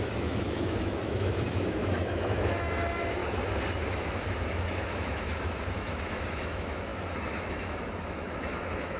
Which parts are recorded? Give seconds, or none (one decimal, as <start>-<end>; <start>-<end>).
3.2-3.9